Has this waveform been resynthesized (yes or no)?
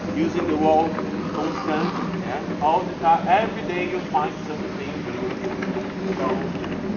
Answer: no